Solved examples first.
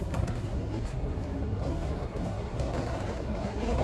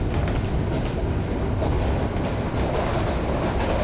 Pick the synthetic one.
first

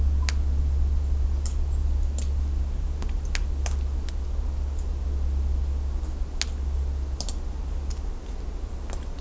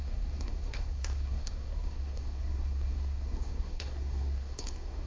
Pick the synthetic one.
second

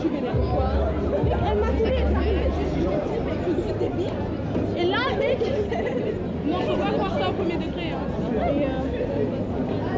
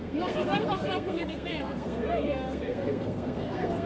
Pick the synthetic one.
second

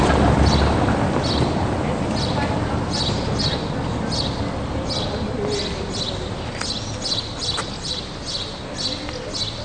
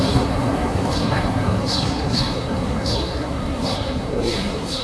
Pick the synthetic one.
second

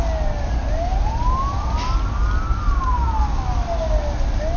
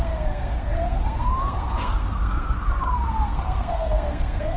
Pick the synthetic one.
second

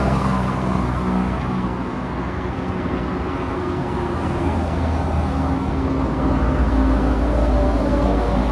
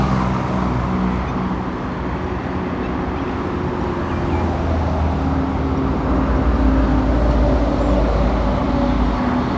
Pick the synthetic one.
first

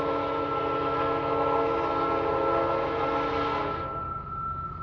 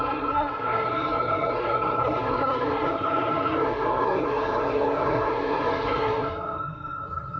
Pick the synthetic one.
second